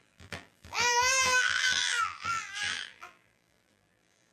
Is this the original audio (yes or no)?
no